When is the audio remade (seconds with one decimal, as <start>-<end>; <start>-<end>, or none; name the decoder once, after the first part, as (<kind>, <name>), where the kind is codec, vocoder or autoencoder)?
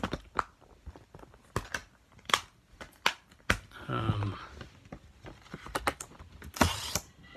none